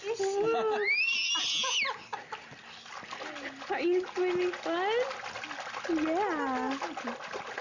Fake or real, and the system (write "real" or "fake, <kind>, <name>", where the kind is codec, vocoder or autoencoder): real